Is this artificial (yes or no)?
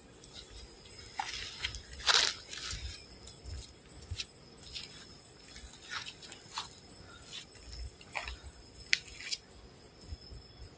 no